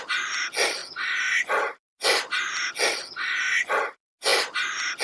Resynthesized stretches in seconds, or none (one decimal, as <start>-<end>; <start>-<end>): none